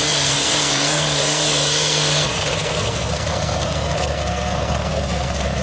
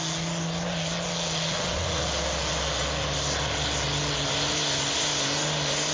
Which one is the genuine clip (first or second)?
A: second